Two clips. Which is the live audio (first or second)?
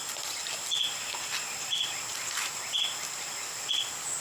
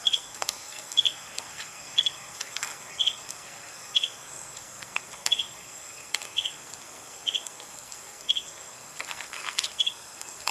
first